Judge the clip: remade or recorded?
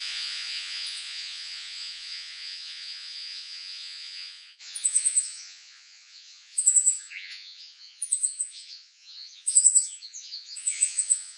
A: remade